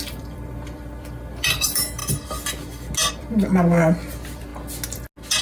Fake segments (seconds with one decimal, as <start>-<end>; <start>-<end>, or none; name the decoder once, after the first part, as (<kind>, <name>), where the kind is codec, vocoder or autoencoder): 0.0-2.0 (vocoder, BigVGAN v2); 3.1-4.5